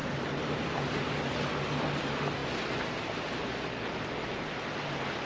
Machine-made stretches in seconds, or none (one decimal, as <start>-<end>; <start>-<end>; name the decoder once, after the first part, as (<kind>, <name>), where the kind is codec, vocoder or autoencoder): 0.0-1.3 (vocoder, BigVGAN v2)